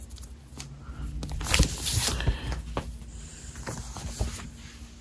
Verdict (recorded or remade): recorded